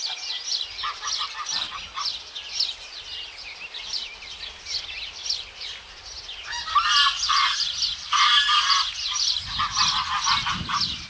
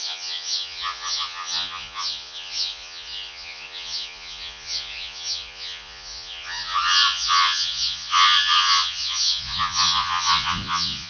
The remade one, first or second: second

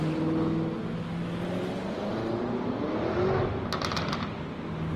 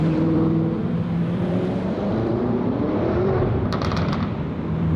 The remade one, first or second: second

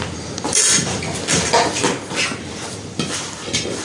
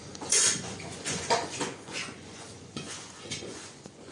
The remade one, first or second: second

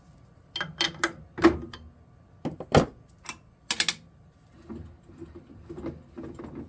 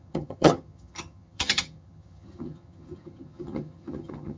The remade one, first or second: second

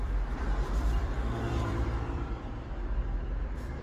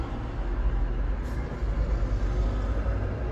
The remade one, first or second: first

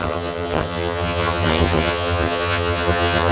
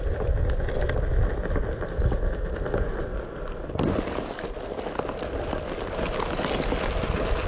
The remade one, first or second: first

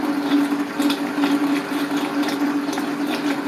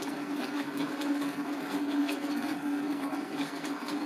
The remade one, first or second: second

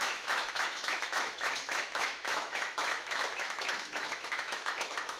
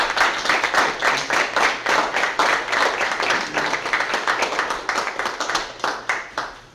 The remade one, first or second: first